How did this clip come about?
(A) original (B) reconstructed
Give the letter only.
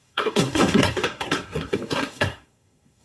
B